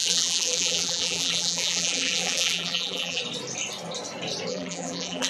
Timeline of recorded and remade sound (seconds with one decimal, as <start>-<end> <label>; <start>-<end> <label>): 0.0-3.2 remade; 3.2-4.5 recorded; 4.5-5.3 remade